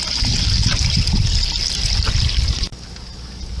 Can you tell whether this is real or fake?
real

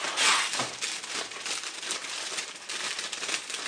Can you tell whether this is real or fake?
fake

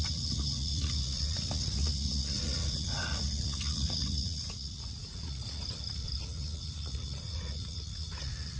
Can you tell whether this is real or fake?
fake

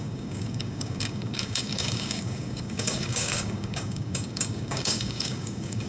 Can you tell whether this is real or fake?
fake